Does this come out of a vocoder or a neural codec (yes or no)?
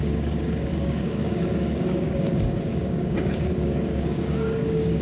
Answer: yes